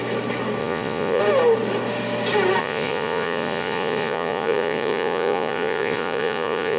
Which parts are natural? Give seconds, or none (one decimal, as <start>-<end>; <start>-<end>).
0.0-0.6; 1.2-2.6